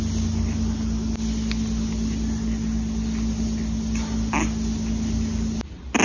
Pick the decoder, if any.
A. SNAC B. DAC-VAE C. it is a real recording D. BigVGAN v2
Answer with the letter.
C